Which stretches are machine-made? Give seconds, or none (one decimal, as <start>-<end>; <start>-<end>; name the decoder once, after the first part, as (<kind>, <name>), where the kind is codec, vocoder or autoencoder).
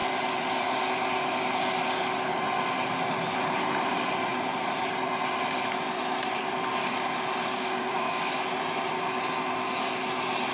7.5-8.3 (codec, DAC)